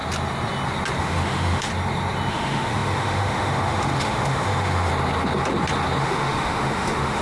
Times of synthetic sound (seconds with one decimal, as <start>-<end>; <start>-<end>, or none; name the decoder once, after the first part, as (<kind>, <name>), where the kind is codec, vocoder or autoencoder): 1.0-1.7 (autoencoder, DAC-VAE); 2.3-4.9; 6.0-7.2